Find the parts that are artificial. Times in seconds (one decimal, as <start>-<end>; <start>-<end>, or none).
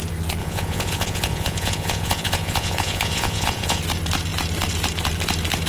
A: 0.4-3.8